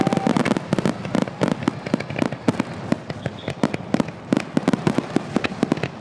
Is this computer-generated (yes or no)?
no